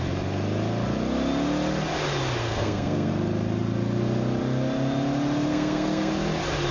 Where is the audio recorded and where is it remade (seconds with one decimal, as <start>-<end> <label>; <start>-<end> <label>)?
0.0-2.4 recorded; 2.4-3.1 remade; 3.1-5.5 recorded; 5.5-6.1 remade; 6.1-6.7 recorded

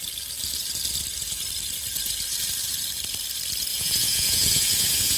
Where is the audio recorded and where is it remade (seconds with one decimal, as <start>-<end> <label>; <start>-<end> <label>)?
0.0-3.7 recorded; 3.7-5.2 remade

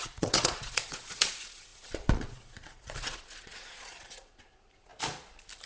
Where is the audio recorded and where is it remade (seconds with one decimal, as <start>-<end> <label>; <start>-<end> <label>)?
0.0-4.9 remade; 4.9-5.7 recorded

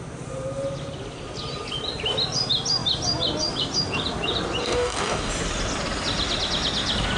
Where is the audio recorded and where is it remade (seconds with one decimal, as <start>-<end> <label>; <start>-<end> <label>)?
0.0-4.6 recorded; 4.6-5.3 remade; 5.3-7.2 recorded